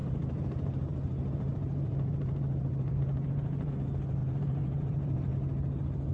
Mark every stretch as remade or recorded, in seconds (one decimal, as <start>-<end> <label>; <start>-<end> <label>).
0.0-3.7 remade; 3.7-4.2 recorded; 4.2-5.3 remade; 5.3-6.1 recorded